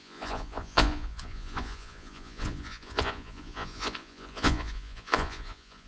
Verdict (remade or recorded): remade